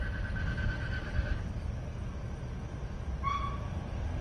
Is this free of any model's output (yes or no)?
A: yes